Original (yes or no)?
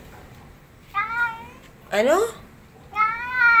yes